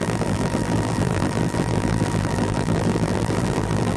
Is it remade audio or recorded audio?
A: remade